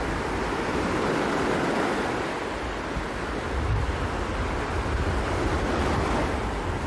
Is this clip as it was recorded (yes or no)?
yes